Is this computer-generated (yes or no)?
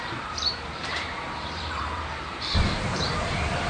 yes